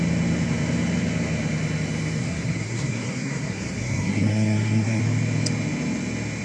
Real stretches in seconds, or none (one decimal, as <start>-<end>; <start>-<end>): 0.0-2.2; 5.0-6.4